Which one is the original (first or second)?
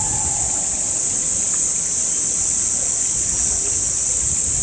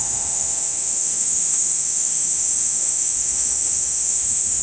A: first